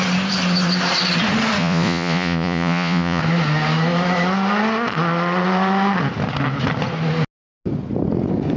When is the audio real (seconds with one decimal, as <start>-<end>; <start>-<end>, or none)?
0.0-1.6; 3.2-8.6